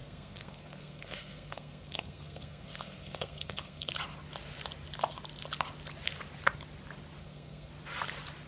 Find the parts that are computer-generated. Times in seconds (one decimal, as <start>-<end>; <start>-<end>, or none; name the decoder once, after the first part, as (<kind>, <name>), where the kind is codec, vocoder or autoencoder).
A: 0.0-3.9 (codec, SNAC); 7.2-7.7